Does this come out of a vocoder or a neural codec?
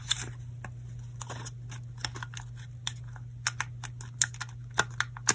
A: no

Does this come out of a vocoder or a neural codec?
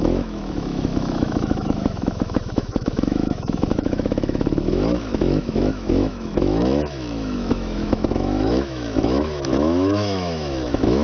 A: yes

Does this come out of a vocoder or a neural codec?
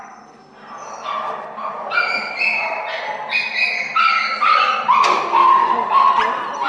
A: no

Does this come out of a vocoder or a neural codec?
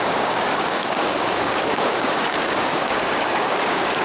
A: yes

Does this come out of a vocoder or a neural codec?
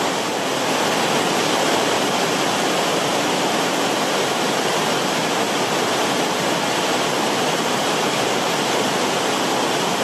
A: yes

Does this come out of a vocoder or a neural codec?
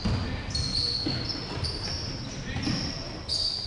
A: no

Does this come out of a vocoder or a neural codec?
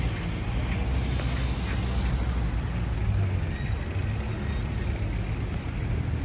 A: no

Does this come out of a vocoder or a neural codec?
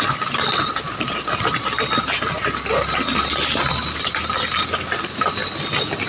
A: no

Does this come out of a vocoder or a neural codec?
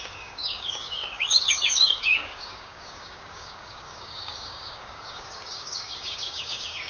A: yes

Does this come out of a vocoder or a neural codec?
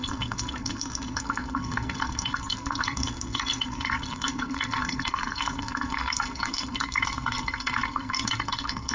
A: yes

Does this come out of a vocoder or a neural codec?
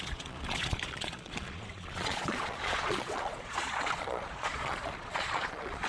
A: yes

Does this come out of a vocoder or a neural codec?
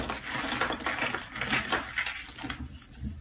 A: no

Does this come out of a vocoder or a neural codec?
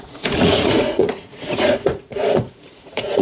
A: yes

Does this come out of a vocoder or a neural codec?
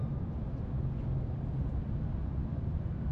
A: no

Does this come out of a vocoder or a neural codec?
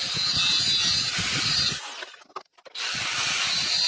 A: no